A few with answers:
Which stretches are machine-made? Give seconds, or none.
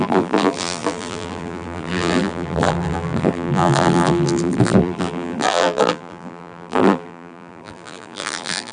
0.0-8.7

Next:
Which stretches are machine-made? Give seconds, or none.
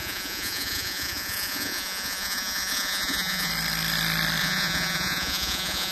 0.0-3.5; 4.4-5.9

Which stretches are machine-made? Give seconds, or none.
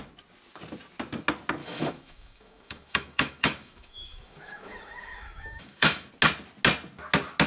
1.6-6.1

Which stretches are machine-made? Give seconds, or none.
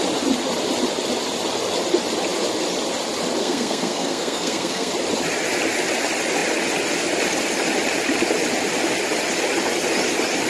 3.4-4.9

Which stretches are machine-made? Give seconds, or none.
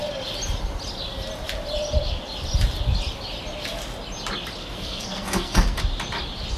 4.6-5.8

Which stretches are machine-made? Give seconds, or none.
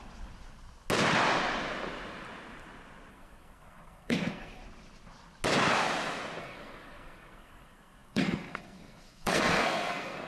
3.1-4.6; 6.4-10.3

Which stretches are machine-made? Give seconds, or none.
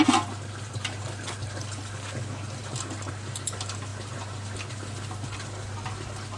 none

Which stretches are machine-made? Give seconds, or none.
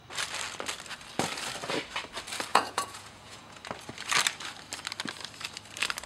2.5-3.6